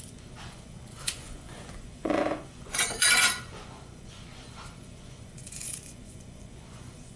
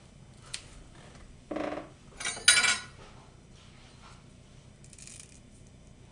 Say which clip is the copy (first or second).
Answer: first